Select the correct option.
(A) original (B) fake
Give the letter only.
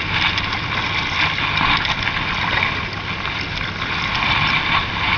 A